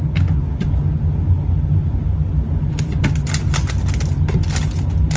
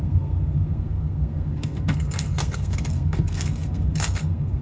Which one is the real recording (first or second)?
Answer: first